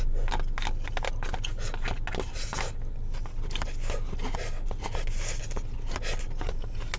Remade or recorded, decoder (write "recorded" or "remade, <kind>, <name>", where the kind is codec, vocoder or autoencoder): recorded